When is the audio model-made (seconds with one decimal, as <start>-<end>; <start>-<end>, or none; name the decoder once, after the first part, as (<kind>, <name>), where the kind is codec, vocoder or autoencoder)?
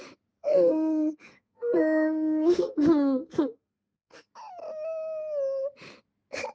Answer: 0.4-4.3 (codec, SNAC)